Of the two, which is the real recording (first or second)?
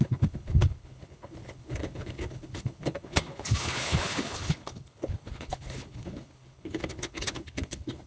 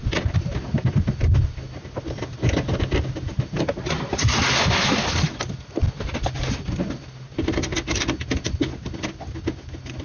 second